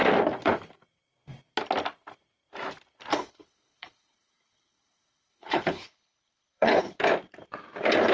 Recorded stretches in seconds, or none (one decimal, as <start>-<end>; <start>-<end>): 0.0-3.1; 7.0-8.1